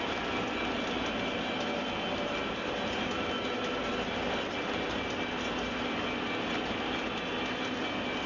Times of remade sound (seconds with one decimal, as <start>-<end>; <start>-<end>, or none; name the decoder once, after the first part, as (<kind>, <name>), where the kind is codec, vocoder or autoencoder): none